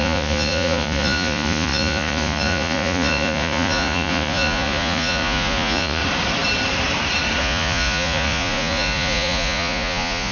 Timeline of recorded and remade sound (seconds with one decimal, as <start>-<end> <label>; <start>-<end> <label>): 0.0-6.0 remade; 6.0-7.4 recorded; 7.4-10.3 remade